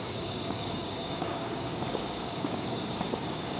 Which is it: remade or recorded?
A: remade